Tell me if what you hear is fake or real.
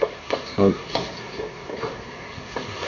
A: fake